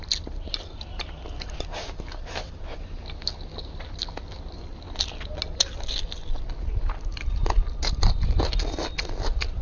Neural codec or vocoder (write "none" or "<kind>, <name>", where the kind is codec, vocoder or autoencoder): none